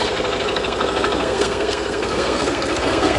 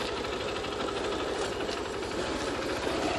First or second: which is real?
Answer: second